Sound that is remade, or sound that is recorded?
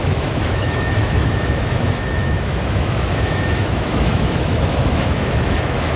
remade